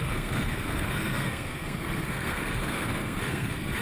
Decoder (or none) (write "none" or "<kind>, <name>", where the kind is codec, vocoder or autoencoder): codec, SNAC